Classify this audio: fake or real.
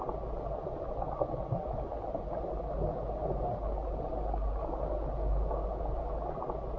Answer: real